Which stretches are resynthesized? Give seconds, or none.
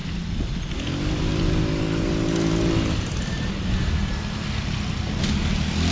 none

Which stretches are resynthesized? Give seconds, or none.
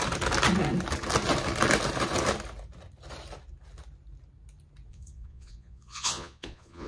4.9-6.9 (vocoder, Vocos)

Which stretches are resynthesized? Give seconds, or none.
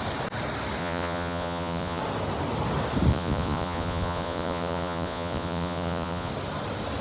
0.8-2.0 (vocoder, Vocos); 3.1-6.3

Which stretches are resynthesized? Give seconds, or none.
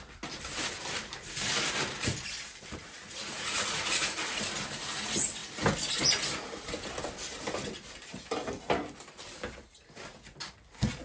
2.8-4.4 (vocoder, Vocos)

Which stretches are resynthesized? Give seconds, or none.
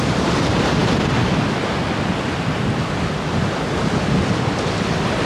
none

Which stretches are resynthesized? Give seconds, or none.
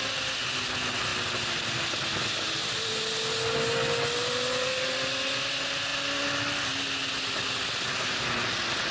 none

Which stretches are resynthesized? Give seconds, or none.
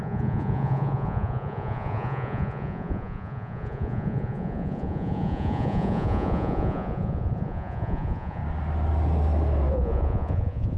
0.0-8.4 (vocoder, Vocos); 9.7-10.8